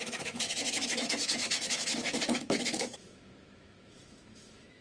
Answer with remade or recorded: remade